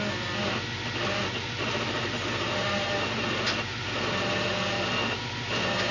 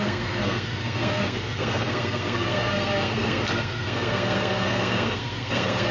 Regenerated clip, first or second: second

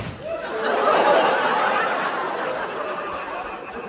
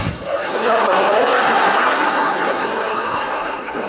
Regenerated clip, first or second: second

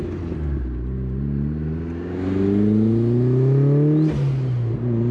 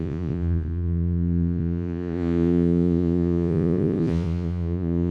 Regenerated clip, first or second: second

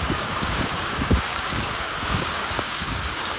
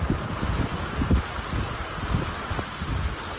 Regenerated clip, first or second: first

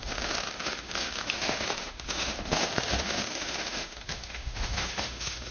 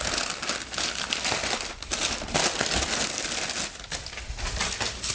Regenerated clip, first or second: first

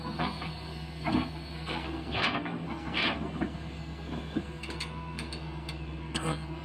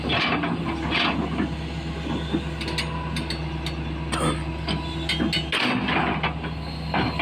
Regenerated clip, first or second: first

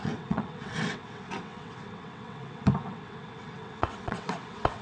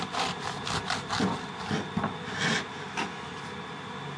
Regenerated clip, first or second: first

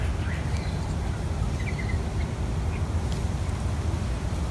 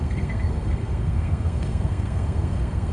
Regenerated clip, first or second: second